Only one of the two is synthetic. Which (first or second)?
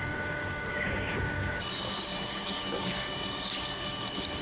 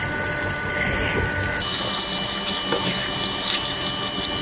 first